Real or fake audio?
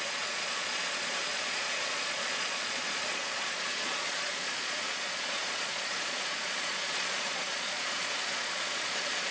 fake